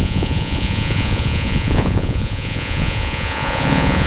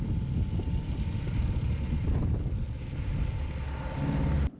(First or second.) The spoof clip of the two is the first